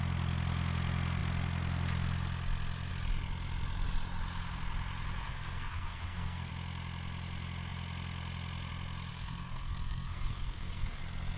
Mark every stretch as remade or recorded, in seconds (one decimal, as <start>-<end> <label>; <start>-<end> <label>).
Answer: 0.0-5.2 recorded; 5.2-6.5 remade; 6.5-9.1 recorded; 9.1-11.0 remade; 11.0-11.4 recorded